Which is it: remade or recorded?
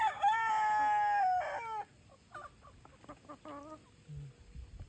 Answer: recorded